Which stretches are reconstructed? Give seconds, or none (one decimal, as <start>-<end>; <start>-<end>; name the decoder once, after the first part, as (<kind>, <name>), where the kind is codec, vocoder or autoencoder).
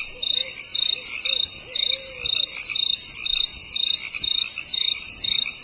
none